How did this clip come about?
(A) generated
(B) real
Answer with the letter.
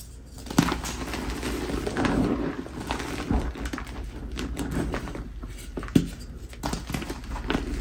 B